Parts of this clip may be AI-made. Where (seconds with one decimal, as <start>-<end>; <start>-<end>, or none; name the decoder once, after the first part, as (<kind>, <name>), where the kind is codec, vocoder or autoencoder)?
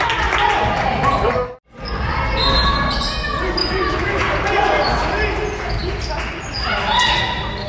3.6-4.2 (autoencoder, DAC-VAE)